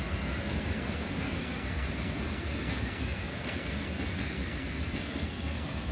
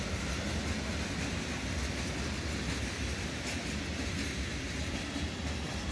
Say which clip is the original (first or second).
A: second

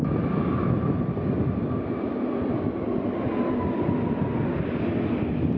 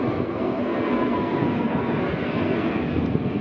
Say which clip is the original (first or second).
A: first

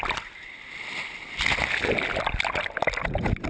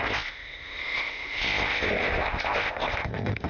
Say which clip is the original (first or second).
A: first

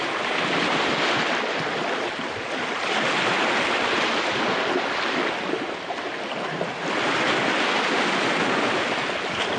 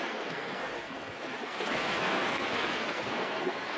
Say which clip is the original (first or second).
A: first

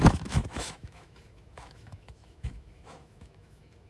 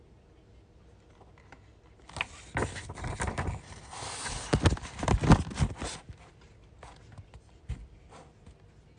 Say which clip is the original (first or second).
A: second